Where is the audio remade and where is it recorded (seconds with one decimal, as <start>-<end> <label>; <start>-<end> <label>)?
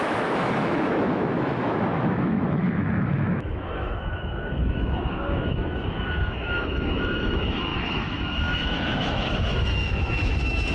0.0-10.7 remade